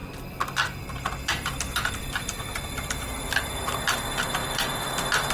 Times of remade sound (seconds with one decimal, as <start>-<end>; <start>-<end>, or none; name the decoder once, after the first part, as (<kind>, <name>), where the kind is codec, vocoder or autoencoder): none